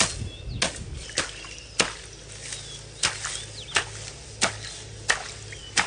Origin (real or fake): real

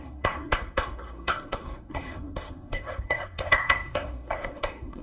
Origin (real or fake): fake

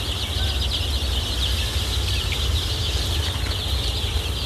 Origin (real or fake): real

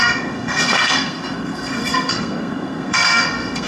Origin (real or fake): fake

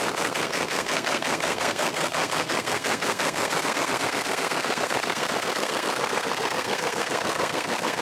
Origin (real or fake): fake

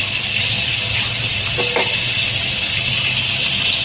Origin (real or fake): real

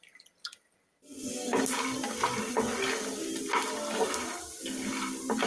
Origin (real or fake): real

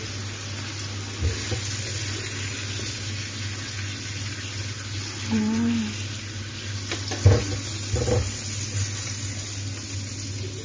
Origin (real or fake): real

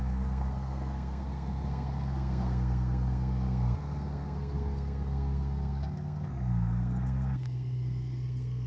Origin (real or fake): fake